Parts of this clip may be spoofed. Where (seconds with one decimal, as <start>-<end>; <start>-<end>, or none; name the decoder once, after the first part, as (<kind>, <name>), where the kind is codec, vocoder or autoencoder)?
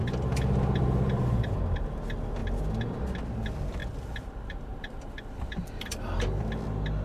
0.0-1.5 (vocoder, BigVGAN v2); 3.8-6.4